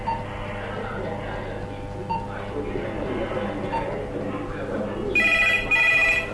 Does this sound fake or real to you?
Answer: real